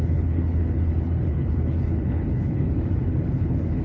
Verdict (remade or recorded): remade